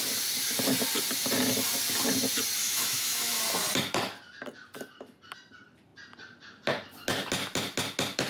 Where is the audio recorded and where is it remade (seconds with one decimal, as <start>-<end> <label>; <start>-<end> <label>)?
0.0-2.6 recorded; 2.6-3.4 remade; 3.4-8.3 recorded